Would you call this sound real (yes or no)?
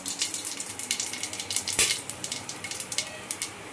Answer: no